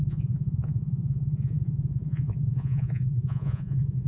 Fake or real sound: fake